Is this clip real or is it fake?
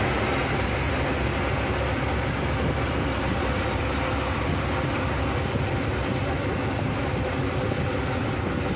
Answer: real